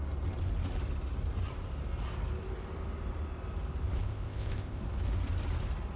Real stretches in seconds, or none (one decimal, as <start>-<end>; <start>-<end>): 0.0-4.0; 4.8-6.0